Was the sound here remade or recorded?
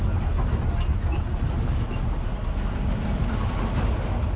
recorded